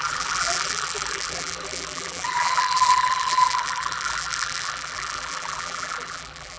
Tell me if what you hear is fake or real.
fake